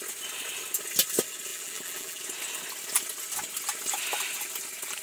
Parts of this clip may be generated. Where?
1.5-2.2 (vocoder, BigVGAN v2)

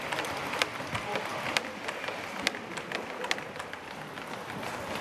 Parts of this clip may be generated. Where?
0.0-1.3 (vocoder, BigVGAN v2); 4.3-5.0

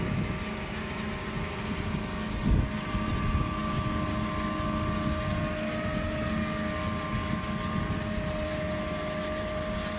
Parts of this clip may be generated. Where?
none

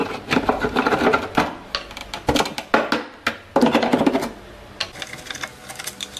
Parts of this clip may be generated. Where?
0.0-1.0 (vocoder, BigVGAN v2)